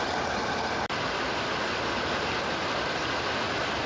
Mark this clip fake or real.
real